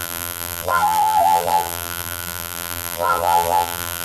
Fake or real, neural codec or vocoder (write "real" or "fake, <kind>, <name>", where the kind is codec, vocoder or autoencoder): fake, vocoder, BigVGAN v2